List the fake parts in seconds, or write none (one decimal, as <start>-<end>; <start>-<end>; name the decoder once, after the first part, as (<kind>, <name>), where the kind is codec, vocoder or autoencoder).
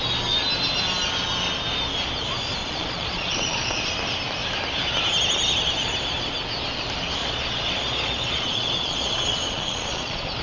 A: 2.6-3.9 (vocoder, Vocos); 7.2-10.4